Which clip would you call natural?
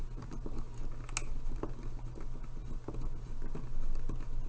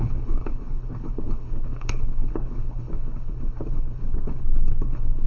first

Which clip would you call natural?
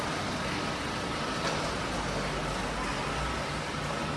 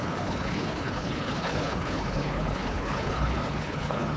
first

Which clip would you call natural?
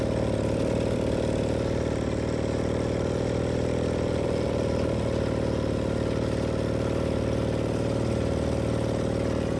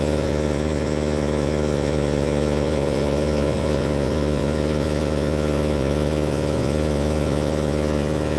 first